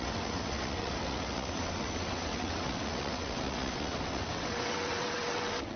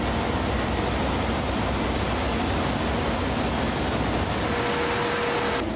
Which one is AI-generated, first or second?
first